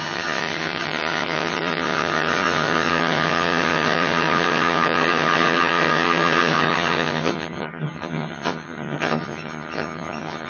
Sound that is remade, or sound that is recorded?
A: remade